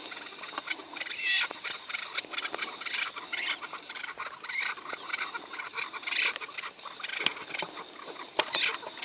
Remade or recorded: recorded